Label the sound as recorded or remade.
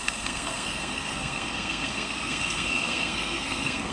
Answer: remade